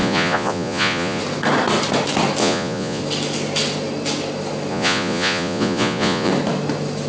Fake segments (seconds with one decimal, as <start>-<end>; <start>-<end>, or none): 0.0-1.2; 2.4-3.0; 4.7-6.3